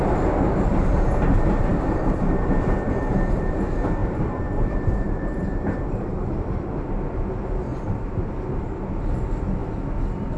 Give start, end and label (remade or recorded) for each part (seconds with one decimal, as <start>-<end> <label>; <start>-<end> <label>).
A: 0.0-4.0 recorded; 4.0-6.3 remade; 6.3-7.7 recorded; 7.7-8.2 remade; 8.2-10.4 recorded